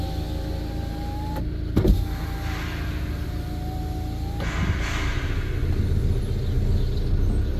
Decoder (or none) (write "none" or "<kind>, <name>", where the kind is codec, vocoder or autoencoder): none